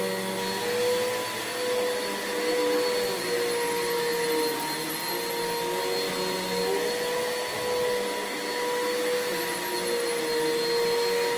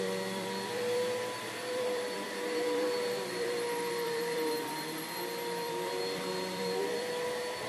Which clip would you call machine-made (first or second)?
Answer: second